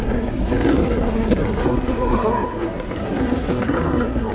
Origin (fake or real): fake